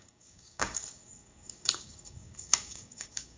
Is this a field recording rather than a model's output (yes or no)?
no